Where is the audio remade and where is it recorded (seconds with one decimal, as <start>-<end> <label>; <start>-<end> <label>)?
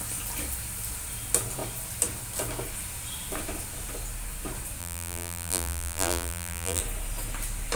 0.0-4.8 recorded; 4.8-6.8 remade; 6.8-7.8 recorded